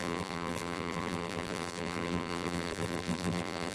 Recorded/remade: remade